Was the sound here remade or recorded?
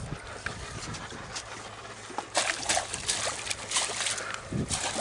recorded